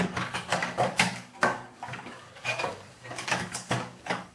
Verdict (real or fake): fake